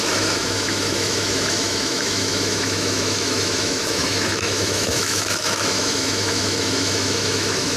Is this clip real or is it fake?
fake